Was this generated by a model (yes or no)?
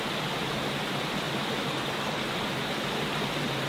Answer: no